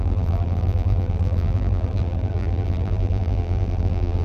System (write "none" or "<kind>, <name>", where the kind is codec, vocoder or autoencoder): vocoder, BigVGAN v2